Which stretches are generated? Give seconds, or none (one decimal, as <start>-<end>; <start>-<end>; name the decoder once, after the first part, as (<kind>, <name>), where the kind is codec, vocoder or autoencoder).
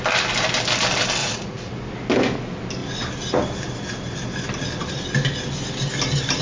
1.2-1.7 (vocoder, Vocos)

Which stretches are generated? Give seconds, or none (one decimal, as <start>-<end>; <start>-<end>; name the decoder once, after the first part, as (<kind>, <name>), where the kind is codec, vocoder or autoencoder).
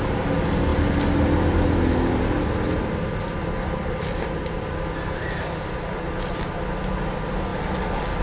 none